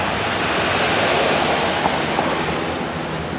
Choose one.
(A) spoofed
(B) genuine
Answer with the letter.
B